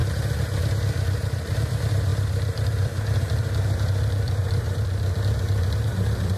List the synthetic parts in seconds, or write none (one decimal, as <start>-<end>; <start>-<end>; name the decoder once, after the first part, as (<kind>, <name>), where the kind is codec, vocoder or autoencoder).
1.4-6.4 (vocoder, BigVGAN v2)